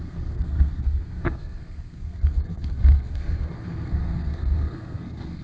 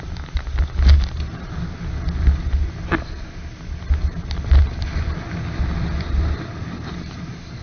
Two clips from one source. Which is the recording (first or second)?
second